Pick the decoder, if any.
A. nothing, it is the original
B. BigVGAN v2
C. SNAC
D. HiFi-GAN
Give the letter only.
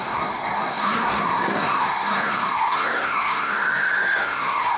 C